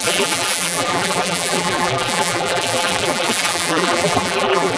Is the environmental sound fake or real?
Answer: fake